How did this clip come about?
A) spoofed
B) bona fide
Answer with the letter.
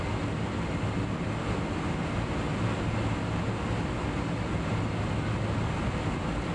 B